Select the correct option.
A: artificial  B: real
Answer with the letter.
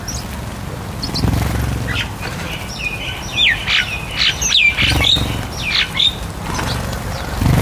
B